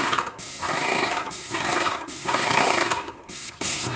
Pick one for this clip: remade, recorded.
remade